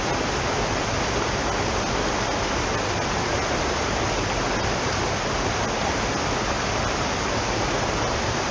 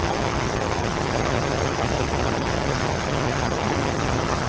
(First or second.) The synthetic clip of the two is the second